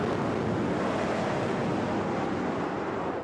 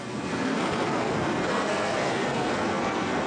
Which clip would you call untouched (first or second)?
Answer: first